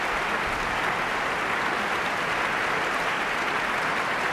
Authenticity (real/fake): real